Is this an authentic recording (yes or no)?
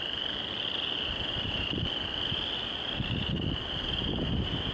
yes